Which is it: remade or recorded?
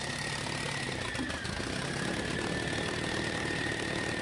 recorded